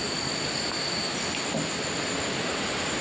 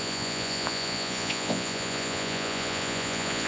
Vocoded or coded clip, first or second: second